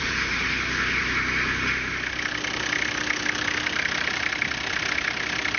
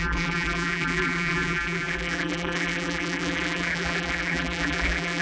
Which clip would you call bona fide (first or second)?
first